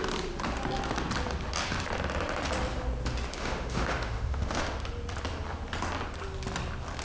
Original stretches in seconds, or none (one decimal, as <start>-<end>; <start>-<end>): 0.0-3.3; 4.6-7.0